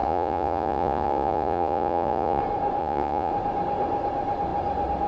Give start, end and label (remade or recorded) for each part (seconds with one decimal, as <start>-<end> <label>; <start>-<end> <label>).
0.0-2.4 remade; 2.4-2.8 recorded; 2.8-3.3 remade; 3.3-5.1 recorded

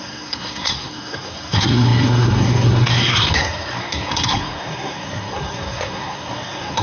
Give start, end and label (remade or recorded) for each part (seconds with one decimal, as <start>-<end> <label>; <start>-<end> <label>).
0.0-6.8 remade

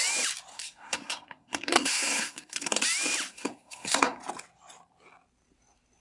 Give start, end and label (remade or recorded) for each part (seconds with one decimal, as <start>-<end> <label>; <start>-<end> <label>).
0.0-0.5 recorded; 0.5-2.8 remade; 2.8-3.3 recorded; 3.3-4.2 remade; 4.2-6.0 recorded

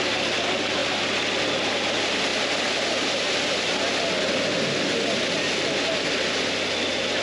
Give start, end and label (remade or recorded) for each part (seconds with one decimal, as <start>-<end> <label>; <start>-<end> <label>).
0.0-7.2 recorded

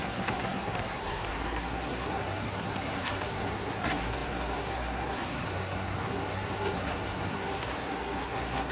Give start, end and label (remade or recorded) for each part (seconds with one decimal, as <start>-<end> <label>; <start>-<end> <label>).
0.0-8.7 remade

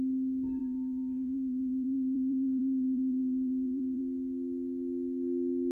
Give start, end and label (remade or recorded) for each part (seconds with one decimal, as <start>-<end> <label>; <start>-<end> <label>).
0.0-0.6 recorded; 0.6-4.0 remade; 4.0-5.7 recorded

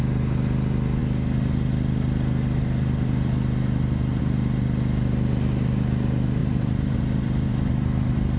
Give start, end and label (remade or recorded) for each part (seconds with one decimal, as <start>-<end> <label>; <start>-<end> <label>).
0.0-6.4 recorded; 6.4-7.7 remade; 7.7-8.4 recorded

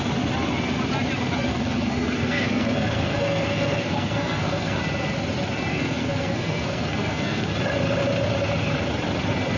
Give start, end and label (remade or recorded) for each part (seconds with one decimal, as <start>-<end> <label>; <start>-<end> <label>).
0.0-1.5 recorded; 1.5-4.8 remade; 4.8-5.7 recorded; 5.7-7.5 remade; 7.5-9.6 recorded